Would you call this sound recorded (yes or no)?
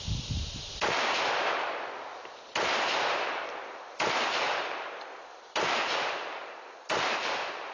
no